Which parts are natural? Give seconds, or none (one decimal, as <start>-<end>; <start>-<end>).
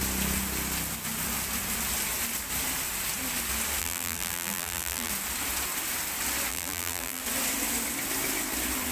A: 0.0-3.8; 5.1-6.5; 7.2-8.9